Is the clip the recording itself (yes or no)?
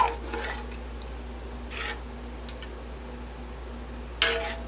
yes